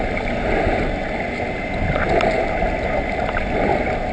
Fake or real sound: real